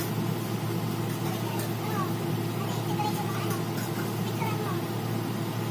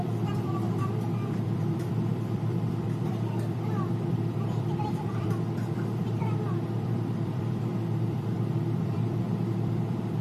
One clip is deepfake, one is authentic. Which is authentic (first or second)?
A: first